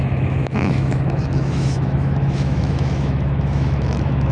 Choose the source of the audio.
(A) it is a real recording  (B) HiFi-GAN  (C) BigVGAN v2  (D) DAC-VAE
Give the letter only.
D